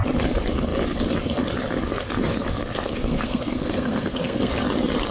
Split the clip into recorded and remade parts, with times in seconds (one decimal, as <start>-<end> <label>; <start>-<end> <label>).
0.0-2.6 recorded; 2.6-4.5 remade; 4.5-5.1 recorded